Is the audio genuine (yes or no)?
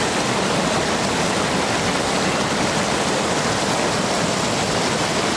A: yes